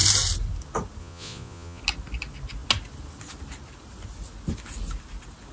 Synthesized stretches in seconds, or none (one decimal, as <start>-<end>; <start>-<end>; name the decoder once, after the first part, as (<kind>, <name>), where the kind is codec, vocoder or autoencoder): 1.0-1.8 (vocoder, Vocos)